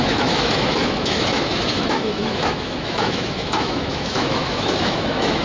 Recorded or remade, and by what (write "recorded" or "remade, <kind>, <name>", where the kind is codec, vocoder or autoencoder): remade, autoencoder, DAC-VAE